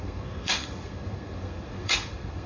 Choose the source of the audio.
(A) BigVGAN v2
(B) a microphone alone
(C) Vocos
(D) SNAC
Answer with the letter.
D